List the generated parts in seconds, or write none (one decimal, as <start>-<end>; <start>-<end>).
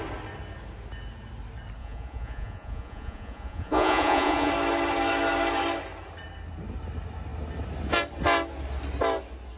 1.8-4.5